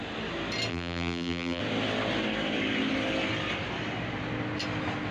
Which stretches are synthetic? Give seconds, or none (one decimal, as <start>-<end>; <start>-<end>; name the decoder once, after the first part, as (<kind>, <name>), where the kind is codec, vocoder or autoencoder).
0.7-1.6 (vocoder, BigVGAN v2)